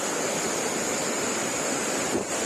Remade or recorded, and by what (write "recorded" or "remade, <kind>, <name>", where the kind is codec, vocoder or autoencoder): remade, vocoder, BigVGAN v2